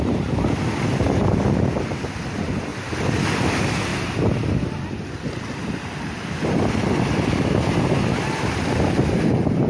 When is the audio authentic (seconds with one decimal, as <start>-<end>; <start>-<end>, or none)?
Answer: 0.0-9.7